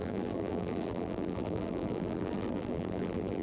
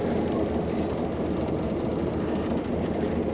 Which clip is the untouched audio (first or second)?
second